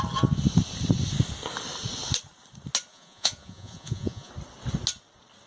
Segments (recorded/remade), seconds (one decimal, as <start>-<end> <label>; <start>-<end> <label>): 0.0-2.9 recorded; 2.9-4.3 remade; 4.3-5.5 recorded

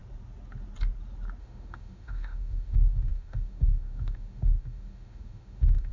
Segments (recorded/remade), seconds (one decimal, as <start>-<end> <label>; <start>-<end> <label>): 0.0-1.4 recorded; 1.4-5.9 remade

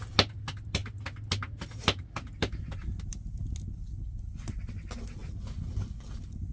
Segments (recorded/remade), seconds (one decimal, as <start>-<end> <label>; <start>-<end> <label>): 0.0-6.5 recorded

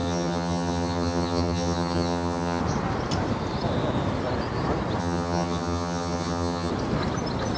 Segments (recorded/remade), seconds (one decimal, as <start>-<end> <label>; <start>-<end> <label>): 0.0-2.6 remade; 2.6-5.0 recorded; 5.0-6.7 remade; 6.7-7.6 recorded

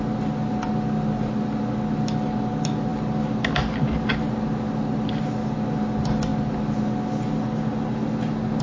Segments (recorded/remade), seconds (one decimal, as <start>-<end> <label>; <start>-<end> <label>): 0.0-8.6 recorded

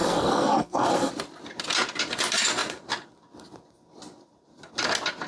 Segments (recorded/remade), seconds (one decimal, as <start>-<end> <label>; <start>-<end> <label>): 0.0-1.1 remade; 1.1-5.3 recorded

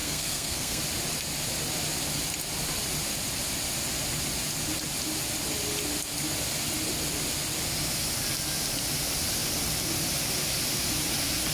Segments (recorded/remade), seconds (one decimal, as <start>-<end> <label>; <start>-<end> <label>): 0.0-0.8 remade; 0.8-11.5 recorded